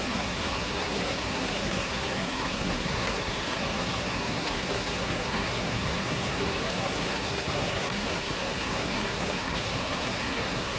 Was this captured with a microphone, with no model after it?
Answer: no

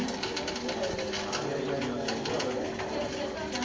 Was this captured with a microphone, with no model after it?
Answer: yes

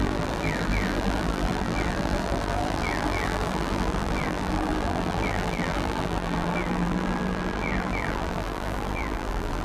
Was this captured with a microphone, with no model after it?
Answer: no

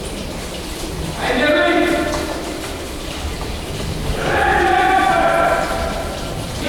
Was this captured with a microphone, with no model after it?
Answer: no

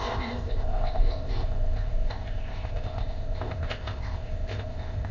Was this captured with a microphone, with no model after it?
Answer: no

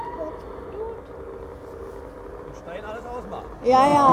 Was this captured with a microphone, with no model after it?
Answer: yes